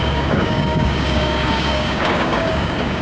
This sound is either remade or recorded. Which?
remade